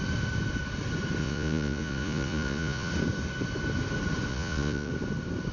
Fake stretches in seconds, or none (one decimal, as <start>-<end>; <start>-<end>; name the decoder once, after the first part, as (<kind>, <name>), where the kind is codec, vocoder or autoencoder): 1.2-2.9 (vocoder, Vocos); 4.3-4.9